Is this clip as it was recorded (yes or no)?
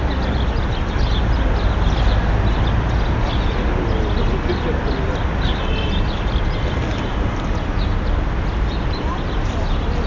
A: yes